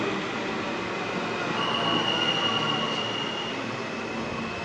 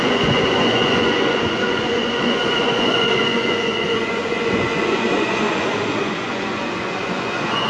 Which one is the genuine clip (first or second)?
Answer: first